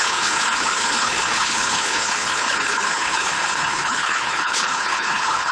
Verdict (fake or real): fake